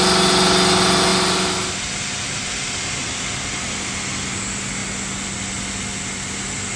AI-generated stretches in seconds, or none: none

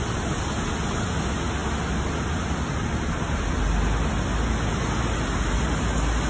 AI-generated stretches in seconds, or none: none